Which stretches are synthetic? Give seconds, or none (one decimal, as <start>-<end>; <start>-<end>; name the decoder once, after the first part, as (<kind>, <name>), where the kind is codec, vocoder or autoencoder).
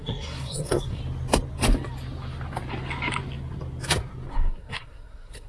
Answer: 0.0-1.0 (codec, SNAC); 4.3-5.5